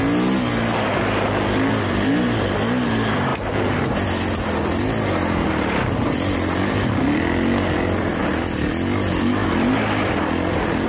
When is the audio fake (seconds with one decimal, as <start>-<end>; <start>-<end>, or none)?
none